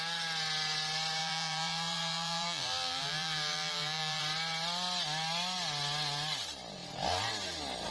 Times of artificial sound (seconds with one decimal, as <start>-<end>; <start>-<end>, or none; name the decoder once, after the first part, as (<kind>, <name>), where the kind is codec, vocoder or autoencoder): 1.2-4.2 (vocoder, BigVGAN v2)